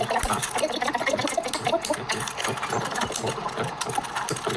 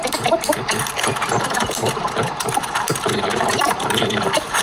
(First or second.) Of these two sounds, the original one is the first